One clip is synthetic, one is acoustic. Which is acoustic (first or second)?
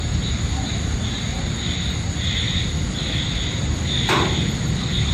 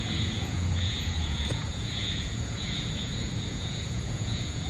first